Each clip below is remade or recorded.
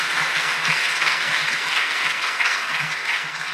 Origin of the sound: remade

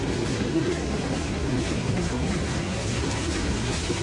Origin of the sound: remade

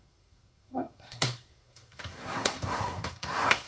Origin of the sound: remade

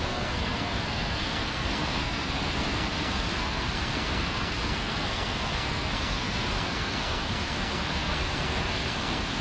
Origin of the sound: remade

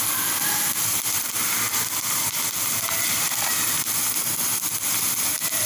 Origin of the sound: recorded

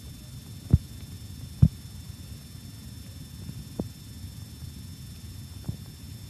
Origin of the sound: recorded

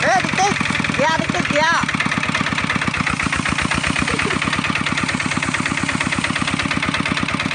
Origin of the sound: recorded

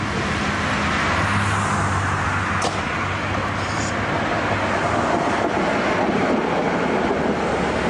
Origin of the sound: recorded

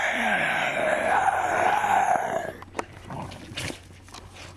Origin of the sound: recorded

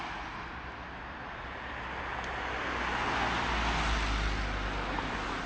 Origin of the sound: recorded